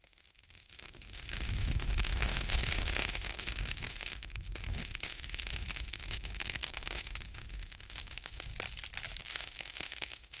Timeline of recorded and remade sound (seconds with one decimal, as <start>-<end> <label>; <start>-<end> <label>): 0.0-8.5 remade; 8.5-9.2 recorded; 9.2-10.4 remade